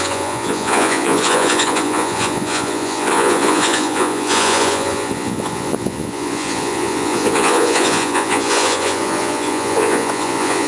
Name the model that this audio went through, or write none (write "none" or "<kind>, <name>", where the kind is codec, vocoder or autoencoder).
vocoder, Vocos